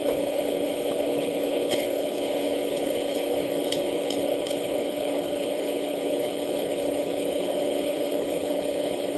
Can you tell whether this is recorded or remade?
remade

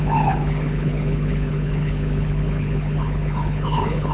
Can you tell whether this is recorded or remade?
remade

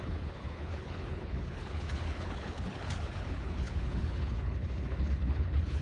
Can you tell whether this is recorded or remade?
remade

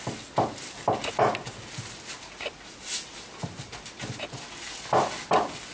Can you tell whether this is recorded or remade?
recorded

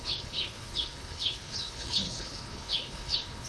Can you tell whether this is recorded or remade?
remade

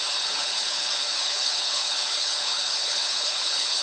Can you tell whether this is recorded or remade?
remade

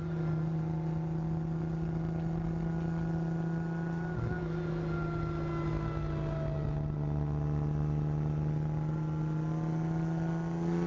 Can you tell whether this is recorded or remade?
recorded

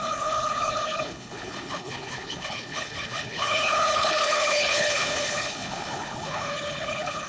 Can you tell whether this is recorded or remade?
remade